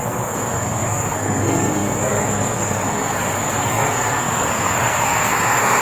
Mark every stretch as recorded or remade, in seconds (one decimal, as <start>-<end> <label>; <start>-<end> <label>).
0.0-5.8 remade

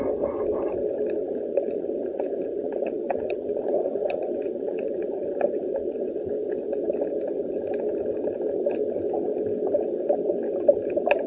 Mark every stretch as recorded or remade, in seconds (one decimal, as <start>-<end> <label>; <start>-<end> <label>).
0.0-1.2 recorded; 1.2-6.1 remade; 6.1-11.3 recorded

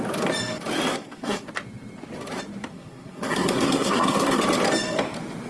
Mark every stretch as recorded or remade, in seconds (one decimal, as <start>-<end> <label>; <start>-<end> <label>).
0.0-0.9 recorded; 0.9-1.5 remade; 1.5-2.7 recorded; 2.7-4.4 remade; 4.4-5.5 recorded

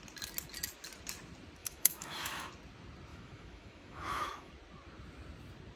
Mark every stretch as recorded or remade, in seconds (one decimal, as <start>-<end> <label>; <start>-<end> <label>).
0.0-1.6 recorded; 1.6-2.5 remade; 2.5-3.1 recorded; 3.1-4.5 remade; 4.5-5.8 recorded

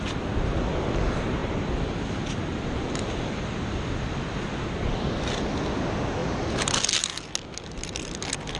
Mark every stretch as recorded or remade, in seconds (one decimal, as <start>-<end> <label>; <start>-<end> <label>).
0.0-1.4 recorded; 1.4-3.9 remade; 3.9-8.6 recorded

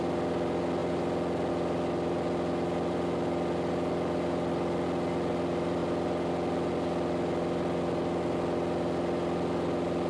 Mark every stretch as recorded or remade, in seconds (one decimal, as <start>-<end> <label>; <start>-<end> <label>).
0.0-10.1 recorded

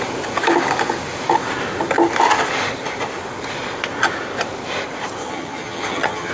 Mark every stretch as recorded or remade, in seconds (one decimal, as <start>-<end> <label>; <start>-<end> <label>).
0.0-5.2 recorded; 5.2-6.3 remade

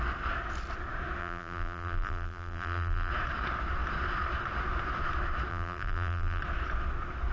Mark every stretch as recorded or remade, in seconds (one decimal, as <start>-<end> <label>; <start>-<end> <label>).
0.0-1.2 recorded; 1.2-3.1 remade; 3.1-5.5 recorded; 5.5-6.4 remade; 6.4-7.3 recorded